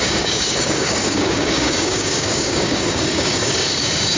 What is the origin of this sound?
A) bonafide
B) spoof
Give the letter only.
B